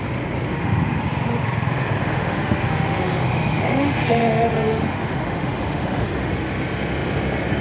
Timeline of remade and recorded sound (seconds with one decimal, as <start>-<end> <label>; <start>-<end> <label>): 0.0-0.5 recorded; 0.5-1.0 remade; 1.0-2.0 recorded; 2.0-6.3 remade; 6.3-7.6 recorded